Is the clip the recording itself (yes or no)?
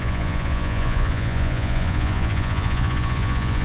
no